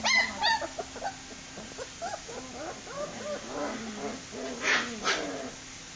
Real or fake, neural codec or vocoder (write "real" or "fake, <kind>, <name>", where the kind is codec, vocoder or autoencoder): real